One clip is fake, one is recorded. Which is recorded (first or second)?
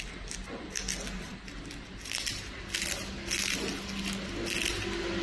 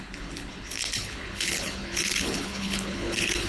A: first